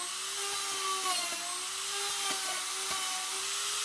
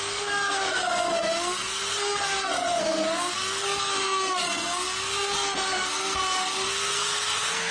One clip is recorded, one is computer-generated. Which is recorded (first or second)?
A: first